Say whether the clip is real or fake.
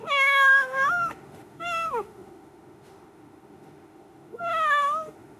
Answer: fake